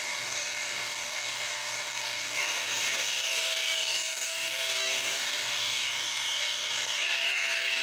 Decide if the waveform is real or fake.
fake